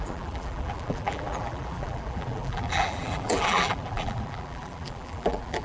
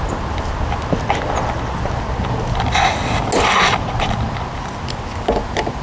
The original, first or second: second